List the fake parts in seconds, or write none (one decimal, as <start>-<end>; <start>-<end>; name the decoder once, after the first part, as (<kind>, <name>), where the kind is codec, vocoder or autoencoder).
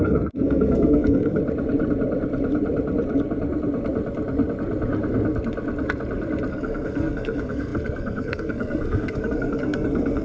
0.0-1.4 (codec, SNAC); 6.5-10.2